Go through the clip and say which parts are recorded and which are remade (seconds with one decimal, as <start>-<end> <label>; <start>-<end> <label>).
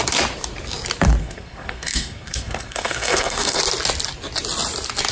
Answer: 0.0-1.2 recorded; 1.2-3.6 remade; 3.6-5.1 recorded